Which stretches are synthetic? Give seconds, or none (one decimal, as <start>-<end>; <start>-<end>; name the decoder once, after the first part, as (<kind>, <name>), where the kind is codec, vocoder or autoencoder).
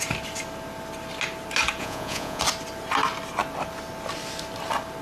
1.8-2.4 (vocoder, Vocos)